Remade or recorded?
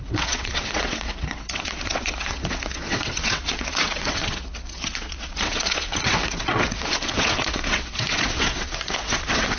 remade